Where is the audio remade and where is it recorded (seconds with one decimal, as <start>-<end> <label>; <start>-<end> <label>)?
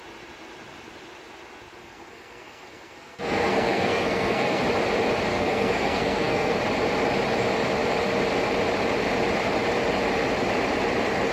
0.0-1.8 recorded; 1.8-4.6 remade; 4.6-5.3 recorded; 5.3-6.6 remade; 6.6-11.3 recorded